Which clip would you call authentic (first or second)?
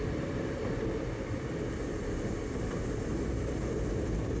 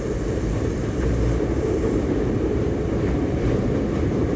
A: first